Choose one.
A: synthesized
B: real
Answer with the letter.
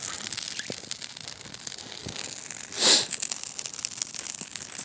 B